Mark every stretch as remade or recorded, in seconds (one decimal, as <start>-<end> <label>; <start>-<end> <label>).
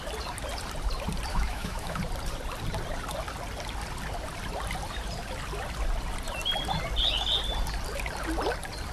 0.0-1.3 recorded; 1.3-2.0 remade; 2.0-8.9 recorded